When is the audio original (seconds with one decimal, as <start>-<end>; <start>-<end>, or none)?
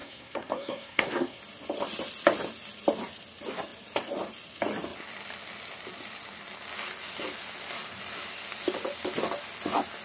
1.4-10.0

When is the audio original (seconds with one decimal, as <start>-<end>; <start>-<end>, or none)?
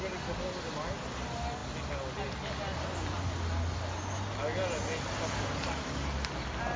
0.0-6.8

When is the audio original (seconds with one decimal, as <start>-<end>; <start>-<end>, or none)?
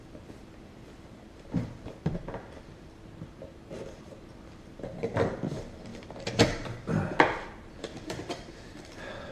none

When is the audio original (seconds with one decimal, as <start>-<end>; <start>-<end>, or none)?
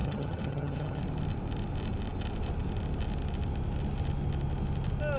1.0-5.2